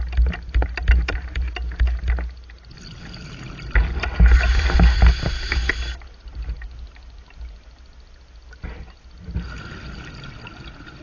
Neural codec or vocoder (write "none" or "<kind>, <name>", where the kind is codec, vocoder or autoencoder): none